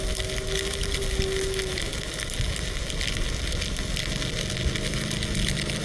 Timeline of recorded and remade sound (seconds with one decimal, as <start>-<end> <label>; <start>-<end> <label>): 0.0-5.8 recorded